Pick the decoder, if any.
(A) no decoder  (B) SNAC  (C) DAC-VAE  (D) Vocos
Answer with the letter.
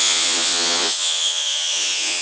D